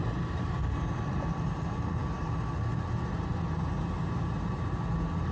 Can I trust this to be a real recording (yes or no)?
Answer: yes